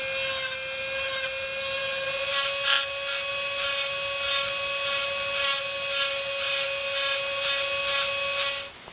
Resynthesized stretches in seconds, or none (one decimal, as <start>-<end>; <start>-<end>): none